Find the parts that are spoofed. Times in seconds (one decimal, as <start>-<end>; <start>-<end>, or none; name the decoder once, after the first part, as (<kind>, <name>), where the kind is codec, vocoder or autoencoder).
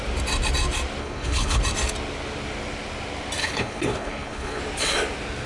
1.0-1.6 (codec, HILCodec); 3.4-4.6